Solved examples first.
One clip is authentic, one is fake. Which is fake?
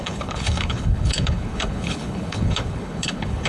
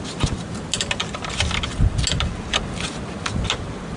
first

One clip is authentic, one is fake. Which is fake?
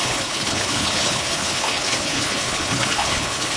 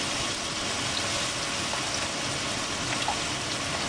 first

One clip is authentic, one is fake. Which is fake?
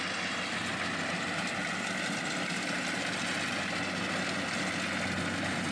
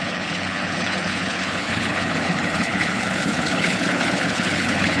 second